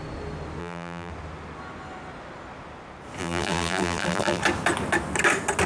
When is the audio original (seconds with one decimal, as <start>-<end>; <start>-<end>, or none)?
0.0-0.6; 1.1-3.2; 4.4-5.7